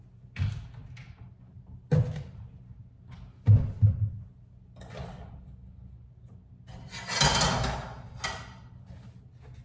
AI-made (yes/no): no